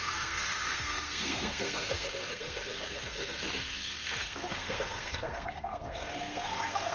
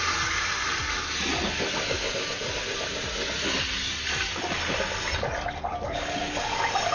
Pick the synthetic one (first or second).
first